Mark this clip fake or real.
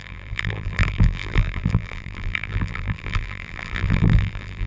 fake